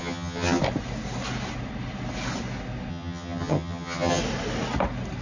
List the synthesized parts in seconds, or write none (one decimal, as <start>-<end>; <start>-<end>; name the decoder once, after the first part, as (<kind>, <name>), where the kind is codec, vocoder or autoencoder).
0.0-0.6 (vocoder, HiFi-GAN); 2.9-4.2